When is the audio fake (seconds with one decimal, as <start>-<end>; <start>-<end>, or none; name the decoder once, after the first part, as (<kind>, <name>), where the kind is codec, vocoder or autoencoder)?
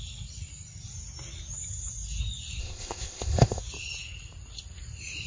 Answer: 2.6-3.6 (codec, ZipCodec)